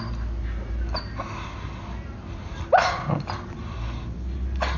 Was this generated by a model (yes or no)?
no